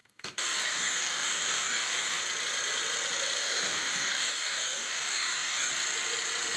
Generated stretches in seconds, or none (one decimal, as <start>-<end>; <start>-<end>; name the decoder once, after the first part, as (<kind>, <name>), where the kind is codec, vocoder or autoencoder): 0.0-2.2 (codec, DAC); 3.4-5.7